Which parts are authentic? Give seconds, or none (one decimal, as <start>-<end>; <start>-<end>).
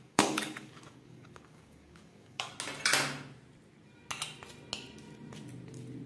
2.5-6.1